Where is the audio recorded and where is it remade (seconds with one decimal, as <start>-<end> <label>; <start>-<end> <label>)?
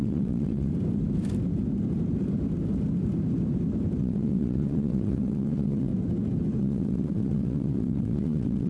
0.0-0.7 remade; 0.7-4.0 recorded; 4.0-5.9 remade; 5.9-6.6 recorded; 6.6-8.7 remade